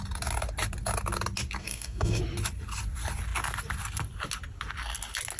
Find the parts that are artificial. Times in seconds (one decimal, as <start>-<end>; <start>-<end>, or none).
1.6-2.2